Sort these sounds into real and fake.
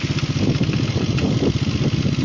real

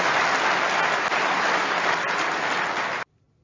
real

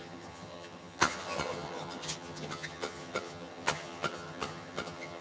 fake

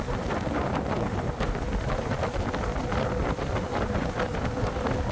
real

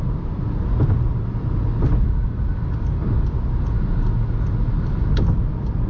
real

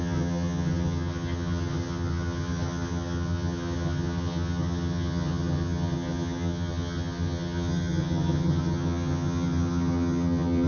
fake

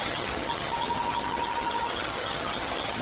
fake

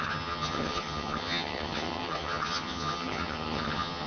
fake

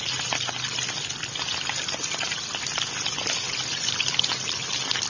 real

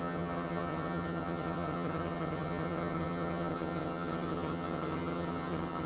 fake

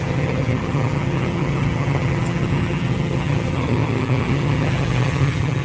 fake